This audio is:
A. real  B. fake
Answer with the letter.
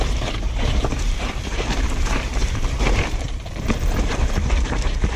B